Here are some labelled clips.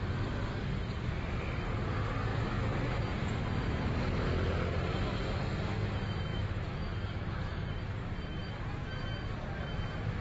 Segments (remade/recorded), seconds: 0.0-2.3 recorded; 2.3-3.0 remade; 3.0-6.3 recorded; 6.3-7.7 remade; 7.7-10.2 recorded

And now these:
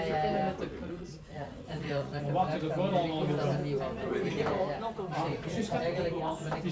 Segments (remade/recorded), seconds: 0.0-0.7 recorded; 0.7-2.2 remade; 2.2-5.3 recorded; 5.3-5.8 remade; 5.8-6.7 recorded

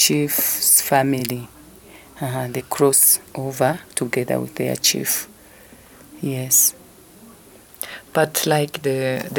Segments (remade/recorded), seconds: 0.0-9.4 recorded

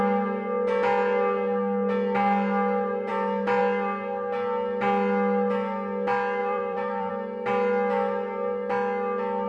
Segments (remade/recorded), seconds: 0.0-6.4 recorded; 6.4-7.1 remade; 7.1-9.5 recorded

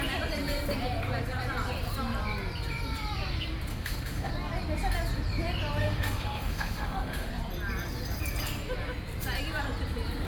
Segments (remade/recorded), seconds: 0.0-3.7 recorded; 3.7-4.3 remade; 4.3-5.8 recorded; 5.8-7.3 remade; 7.3-10.3 recorded

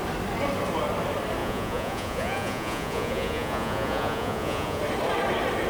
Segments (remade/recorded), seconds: 0.0-1.4 recorded; 1.4-4.8 remade; 4.8-5.7 recorded

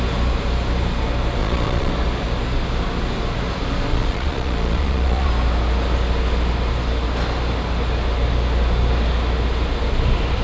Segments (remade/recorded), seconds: 0.0-1.4 recorded; 1.4-1.9 remade; 1.9-3.9 recorded; 3.9-5.3 remade; 5.3-10.4 recorded